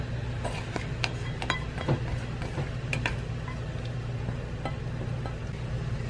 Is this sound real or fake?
real